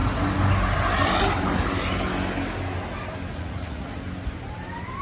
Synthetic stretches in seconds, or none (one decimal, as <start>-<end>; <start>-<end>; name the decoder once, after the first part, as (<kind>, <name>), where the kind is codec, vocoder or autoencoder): 3.3-3.9 (vocoder, Vocos)